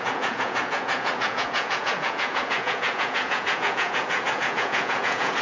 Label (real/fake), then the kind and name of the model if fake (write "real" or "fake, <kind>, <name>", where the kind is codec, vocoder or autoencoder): fake, vocoder, Vocos